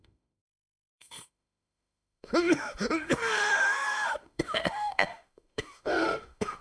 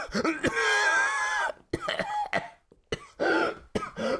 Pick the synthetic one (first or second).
first